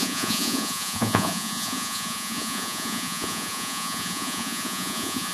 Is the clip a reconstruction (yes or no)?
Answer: yes